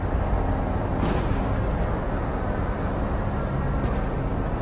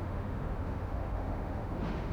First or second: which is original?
first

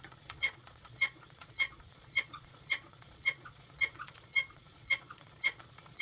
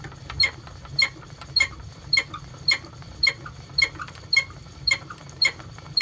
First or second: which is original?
second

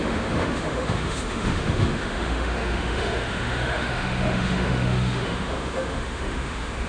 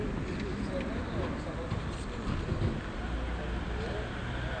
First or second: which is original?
second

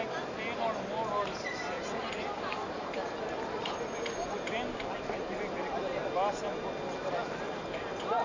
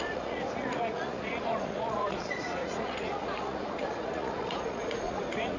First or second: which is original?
first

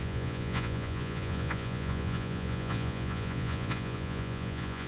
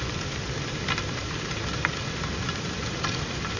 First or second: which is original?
second